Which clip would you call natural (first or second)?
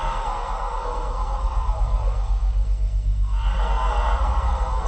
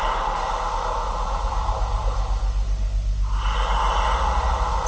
second